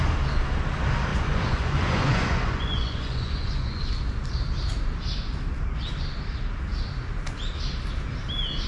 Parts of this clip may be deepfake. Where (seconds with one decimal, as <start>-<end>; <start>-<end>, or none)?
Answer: 1.1-3.8